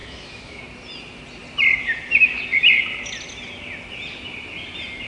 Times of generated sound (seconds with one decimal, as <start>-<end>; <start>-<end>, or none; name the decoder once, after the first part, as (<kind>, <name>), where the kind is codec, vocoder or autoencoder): 0.0-0.6 (autoencoder, DAC-VAE)